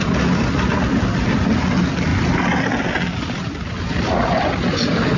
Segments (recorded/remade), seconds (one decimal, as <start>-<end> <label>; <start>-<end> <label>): 0.0-5.2 recorded